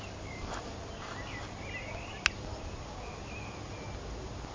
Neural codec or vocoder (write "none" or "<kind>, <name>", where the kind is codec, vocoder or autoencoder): none